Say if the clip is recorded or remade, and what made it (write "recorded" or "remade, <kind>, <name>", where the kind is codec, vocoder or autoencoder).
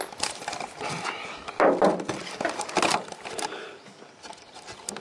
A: recorded